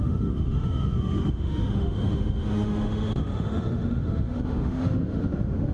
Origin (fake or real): fake